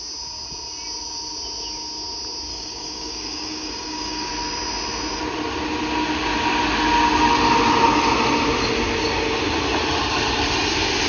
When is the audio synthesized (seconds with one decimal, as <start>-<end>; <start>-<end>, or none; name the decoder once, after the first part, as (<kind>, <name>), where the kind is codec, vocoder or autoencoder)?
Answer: 2.5-4.3 (codec, DAC)